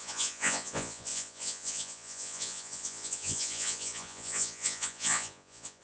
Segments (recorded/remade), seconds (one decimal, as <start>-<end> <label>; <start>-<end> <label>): 0.0-5.8 remade